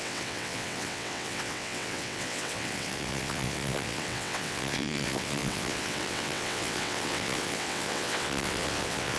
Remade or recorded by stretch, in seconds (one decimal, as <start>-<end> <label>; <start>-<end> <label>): 0.0-9.2 remade